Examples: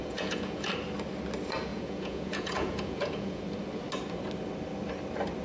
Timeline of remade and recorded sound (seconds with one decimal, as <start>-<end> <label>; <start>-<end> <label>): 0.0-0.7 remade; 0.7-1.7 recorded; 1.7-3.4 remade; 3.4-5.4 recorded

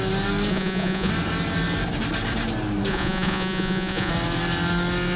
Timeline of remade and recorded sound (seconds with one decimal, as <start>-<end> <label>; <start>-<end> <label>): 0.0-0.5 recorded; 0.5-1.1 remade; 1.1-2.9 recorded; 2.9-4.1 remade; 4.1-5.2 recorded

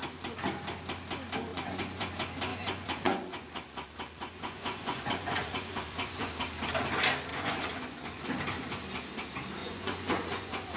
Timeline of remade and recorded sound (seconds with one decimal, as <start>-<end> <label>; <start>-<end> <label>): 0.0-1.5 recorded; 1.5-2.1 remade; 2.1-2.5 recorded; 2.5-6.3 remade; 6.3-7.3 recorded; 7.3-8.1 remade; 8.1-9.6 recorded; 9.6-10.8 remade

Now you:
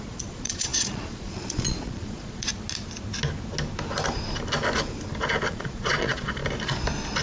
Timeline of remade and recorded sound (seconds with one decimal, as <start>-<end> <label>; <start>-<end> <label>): 0.0-2.5 remade; 2.5-5.5 recorded; 5.5-6.4 remade; 6.4-7.2 recorded

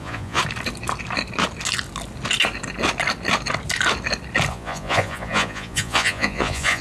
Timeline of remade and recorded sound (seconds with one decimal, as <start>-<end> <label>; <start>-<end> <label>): 0.0-0.4 remade; 0.4-4.5 recorded; 4.5-6.8 remade

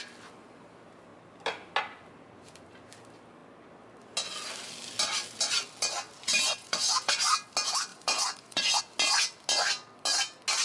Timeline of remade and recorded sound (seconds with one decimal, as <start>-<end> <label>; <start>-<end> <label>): 0.0-6.2 recorded; 6.2-7.3 remade; 7.3-7.9 recorded; 7.9-8.8 remade; 8.8-10.6 recorded